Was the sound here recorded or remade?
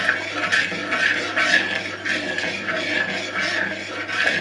recorded